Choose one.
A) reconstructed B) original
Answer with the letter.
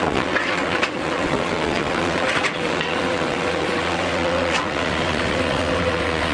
A